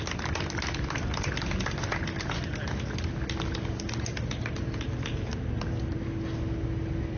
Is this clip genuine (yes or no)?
yes